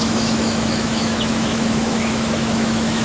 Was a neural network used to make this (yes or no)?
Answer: yes